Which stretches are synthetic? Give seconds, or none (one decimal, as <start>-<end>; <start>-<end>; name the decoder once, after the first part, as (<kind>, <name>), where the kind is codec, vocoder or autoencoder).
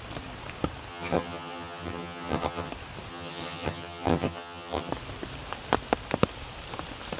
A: 0.9-2.7 (vocoder, HiFi-GAN); 3.1-4.9